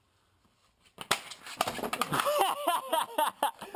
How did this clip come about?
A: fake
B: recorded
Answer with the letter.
B